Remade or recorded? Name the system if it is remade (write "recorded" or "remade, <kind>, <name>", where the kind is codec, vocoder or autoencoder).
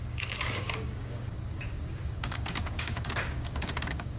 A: remade, codec, DAC